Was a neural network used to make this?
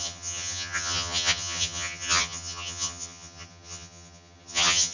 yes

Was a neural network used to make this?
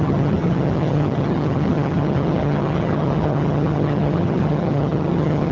yes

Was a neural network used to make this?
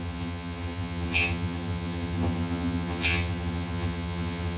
yes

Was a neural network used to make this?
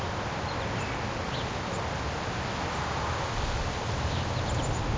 no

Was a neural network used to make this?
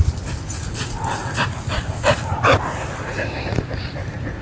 no